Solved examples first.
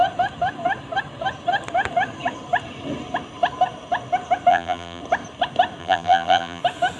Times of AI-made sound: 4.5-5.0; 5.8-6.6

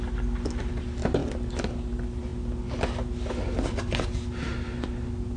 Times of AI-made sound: none

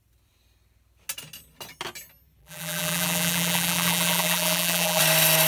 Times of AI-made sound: 2.4-5.0

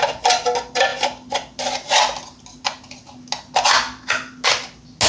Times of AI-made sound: none

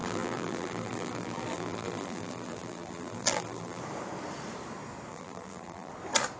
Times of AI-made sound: 0.0-3.8; 5.1-5.9